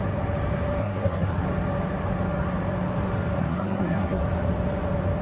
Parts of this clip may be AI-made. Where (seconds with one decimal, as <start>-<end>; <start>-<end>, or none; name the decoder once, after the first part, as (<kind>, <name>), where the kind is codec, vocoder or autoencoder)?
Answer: 0.8-1.4 (codec, SNAC); 3.4-4.2

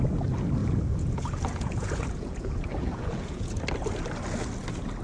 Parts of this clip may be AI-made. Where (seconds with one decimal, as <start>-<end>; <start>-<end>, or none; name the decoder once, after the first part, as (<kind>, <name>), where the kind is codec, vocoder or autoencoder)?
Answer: 0.6-3.6 (vocoder, Vocos)

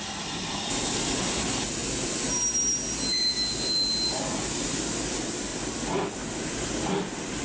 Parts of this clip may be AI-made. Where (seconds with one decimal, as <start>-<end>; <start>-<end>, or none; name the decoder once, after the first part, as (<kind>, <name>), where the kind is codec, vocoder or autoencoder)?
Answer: none

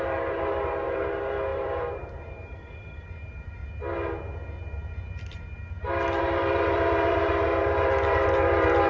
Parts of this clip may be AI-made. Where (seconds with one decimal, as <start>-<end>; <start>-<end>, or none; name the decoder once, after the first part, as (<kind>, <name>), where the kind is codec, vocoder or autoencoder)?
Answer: 0.0-3.6 (vocoder, BigVGAN v2); 6.2-8.9

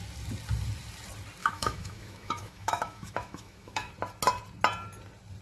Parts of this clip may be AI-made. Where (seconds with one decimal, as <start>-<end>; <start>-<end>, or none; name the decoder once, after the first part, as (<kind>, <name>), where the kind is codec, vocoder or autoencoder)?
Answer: 1.4-3.9 (autoencoder, DAC-VAE)

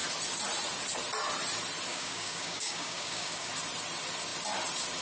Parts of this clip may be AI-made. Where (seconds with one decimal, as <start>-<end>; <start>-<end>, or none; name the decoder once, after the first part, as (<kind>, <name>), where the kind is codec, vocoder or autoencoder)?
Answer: 1.9-3.5 (codec, DAC)

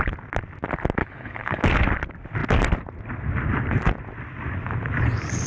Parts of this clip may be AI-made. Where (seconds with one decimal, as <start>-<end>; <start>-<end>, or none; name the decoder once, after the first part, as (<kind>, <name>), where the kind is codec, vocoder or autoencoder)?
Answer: 1.0-1.6 (codec, HILCodec)

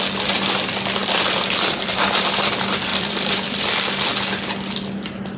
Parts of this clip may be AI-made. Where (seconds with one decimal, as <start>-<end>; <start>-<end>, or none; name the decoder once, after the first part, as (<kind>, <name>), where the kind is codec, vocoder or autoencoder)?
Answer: 1.0-2.5 (vocoder, BigVGAN v2); 2.9-3.9